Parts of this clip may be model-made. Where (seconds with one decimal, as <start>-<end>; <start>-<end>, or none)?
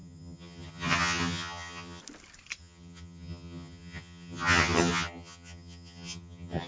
0.0-2.0; 2.6-6.7